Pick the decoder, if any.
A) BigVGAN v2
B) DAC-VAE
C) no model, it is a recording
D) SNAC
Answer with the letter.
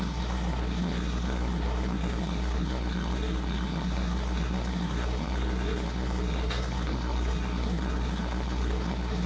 D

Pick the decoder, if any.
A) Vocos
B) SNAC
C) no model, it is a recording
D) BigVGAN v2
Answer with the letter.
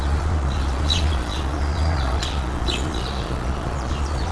A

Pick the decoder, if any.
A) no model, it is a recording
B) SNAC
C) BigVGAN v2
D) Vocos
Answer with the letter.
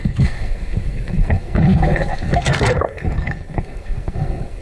B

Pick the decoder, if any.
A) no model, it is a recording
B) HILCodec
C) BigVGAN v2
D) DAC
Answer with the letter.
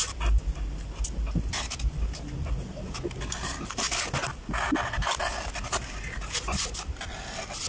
A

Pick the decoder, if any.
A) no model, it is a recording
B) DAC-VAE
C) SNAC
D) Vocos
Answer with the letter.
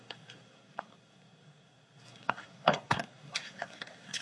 C